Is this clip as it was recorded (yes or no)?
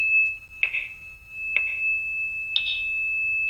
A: yes